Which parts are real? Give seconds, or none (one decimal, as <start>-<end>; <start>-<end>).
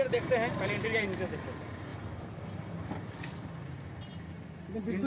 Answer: 0.0-5.1